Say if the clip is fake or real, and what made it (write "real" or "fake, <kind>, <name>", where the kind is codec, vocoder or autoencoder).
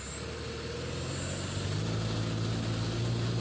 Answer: real